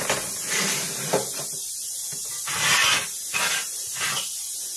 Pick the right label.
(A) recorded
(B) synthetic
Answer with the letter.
A